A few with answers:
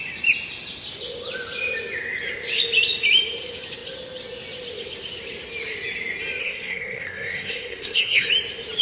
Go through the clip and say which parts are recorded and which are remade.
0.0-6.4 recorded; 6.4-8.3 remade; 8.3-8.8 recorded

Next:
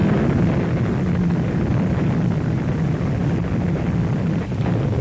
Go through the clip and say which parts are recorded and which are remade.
0.0-1.5 recorded; 1.5-3.2 remade; 3.2-3.7 recorded; 3.7-5.0 remade

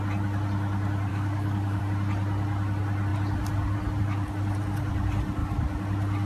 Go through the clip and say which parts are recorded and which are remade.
0.0-1.1 recorded; 1.1-1.8 remade; 1.8-6.3 recorded

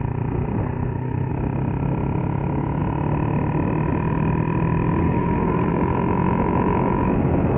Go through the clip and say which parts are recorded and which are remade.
0.0-0.6 recorded; 0.6-1.3 remade; 1.3-5.0 recorded; 5.0-5.7 remade; 5.7-7.6 recorded

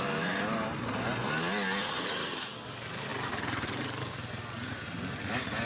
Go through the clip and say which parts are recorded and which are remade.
0.0-5.7 recorded

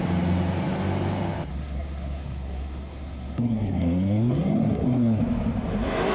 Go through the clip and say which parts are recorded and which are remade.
0.0-1.5 recorded; 1.5-5.2 remade; 5.2-6.1 recorded

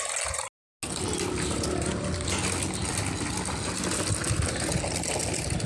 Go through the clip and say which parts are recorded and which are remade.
0.0-5.7 recorded

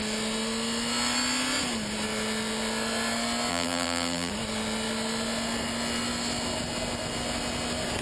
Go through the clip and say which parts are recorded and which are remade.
0.0-3.5 recorded; 3.5-4.3 remade; 4.3-8.0 recorded